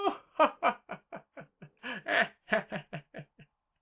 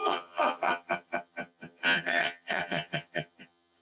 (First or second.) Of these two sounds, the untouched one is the first